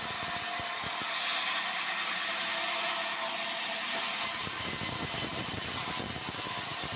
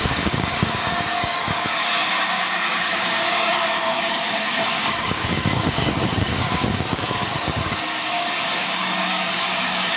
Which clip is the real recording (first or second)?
first